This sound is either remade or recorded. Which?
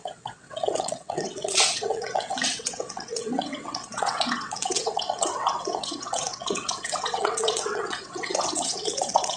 remade